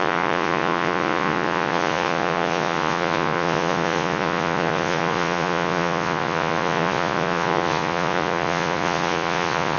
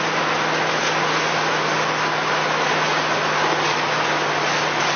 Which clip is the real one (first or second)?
second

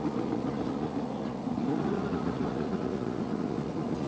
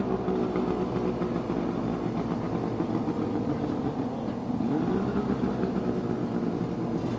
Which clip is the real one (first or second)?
second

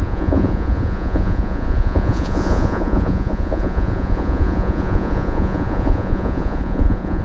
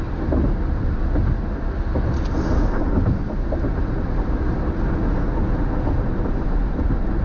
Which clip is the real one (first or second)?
second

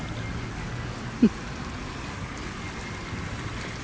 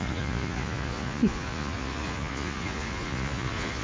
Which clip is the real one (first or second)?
first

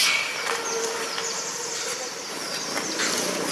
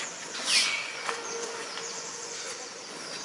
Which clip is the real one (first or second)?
first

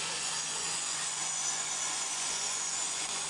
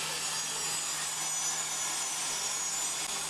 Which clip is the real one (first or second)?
second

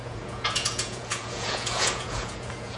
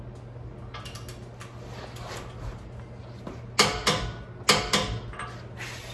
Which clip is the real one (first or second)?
second